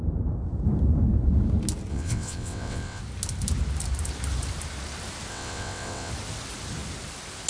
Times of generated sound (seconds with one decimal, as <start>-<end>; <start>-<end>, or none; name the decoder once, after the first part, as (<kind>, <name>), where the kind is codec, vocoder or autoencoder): 1.9-3.0 (vocoder, WaveNeXt); 5.3-6.1

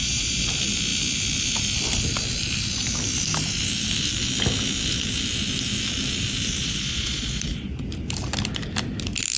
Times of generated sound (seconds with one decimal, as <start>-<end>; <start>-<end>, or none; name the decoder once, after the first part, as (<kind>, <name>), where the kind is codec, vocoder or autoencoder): 0.0-0.5 (vocoder, Vocos); 6.6-7.8